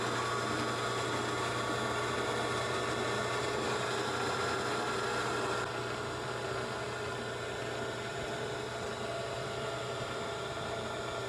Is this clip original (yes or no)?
yes